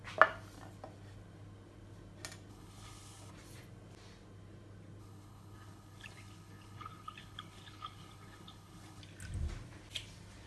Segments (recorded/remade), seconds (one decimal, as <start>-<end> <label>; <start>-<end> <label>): 0.0-2.5 recorded; 2.5-3.3 remade; 3.3-5.0 recorded; 5.0-9.0 remade; 9.0-10.5 recorded